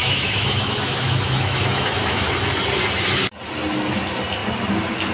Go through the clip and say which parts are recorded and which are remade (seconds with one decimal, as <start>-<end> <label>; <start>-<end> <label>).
0.0-2.3 remade; 2.3-5.1 recorded